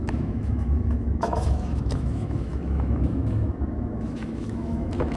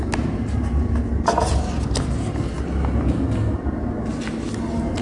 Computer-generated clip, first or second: first